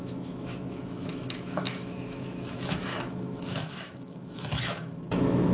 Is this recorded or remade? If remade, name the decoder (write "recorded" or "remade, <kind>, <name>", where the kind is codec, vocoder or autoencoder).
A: remade, autoencoder, DAC-VAE